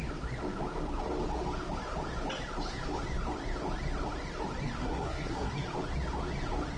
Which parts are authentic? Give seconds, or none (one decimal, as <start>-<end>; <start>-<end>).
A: 0.0-4.8; 5.5-6.8